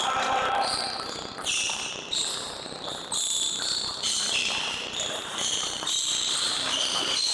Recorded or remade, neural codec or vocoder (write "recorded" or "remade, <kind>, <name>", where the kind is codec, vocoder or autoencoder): remade, vocoder, BigVGAN v2